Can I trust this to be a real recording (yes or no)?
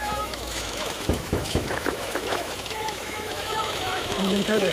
no